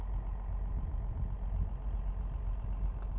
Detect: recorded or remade recorded